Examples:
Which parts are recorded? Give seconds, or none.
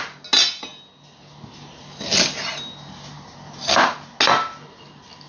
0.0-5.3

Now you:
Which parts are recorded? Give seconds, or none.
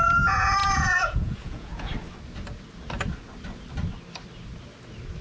1.9-5.2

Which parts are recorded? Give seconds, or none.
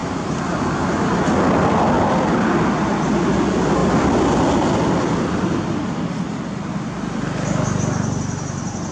0.0-8.9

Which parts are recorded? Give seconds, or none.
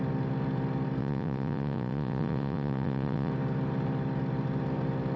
0.0-1.0; 3.3-5.2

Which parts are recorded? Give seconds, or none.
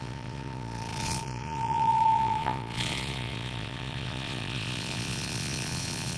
none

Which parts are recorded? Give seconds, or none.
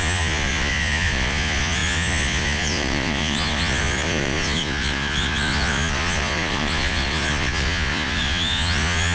none